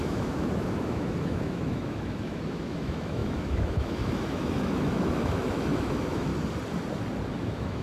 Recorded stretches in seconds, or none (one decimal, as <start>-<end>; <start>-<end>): 6.3-7.3